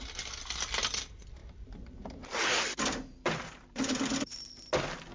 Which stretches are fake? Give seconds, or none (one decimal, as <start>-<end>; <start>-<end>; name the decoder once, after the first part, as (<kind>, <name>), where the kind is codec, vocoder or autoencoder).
1.4-4.5 (vocoder, BigVGAN v2)